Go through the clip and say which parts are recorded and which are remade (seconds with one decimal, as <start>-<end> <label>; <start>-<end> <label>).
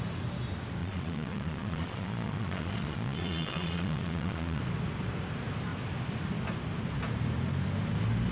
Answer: 0.0-0.8 recorded; 0.8-4.6 remade; 4.6-8.3 recorded